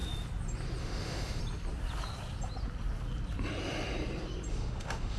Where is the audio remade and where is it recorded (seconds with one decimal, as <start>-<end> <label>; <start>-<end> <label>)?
0.0-0.8 recorded; 0.8-1.4 remade; 1.4-4.5 recorded; 4.5-5.2 remade